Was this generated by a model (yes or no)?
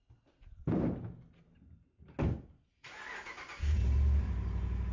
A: no